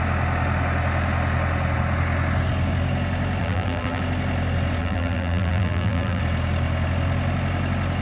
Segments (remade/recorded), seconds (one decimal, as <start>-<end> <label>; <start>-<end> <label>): 0.0-3.4 recorded; 3.4-4.0 remade; 4.0-4.8 recorded; 4.8-6.2 remade; 6.2-8.0 recorded